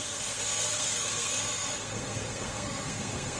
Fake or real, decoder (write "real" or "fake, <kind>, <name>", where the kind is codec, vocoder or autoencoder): fake, codec, SNAC